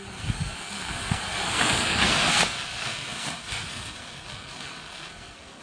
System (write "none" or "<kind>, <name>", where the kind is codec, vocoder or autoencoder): codec, SNAC